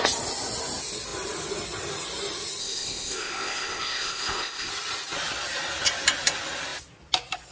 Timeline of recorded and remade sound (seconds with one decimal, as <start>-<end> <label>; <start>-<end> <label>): 0.0-2.6 recorded; 2.6-4.7 remade; 4.7-7.5 recorded